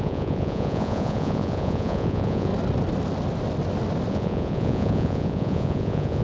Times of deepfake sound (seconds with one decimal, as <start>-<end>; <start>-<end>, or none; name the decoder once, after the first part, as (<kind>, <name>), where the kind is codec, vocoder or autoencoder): 0.0-2.5 (vocoder, Vocos); 4.1-6.2